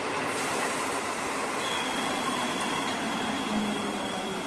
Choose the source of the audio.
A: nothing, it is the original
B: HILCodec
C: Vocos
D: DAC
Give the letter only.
A